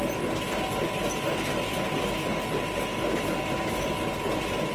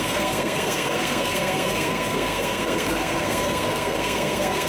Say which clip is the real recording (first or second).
first